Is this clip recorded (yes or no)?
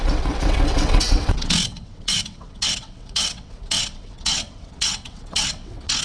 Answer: no